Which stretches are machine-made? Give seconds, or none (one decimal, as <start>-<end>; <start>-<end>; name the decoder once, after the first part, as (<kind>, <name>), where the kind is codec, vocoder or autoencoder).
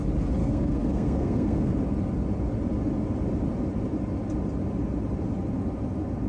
0.4-1.7 (codec, SNAC)